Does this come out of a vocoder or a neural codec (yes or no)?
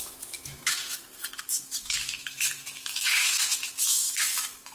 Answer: yes